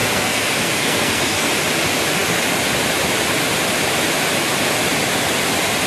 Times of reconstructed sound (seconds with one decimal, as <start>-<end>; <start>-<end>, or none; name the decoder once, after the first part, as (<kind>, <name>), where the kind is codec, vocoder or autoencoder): 0.0-1.5 (codec, SNAC)